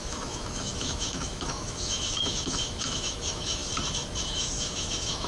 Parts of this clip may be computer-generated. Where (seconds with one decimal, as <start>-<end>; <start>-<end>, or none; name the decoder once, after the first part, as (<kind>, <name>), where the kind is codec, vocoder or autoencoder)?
0.0-3.6 (autoencoder, DAC-VAE); 4.2-5.3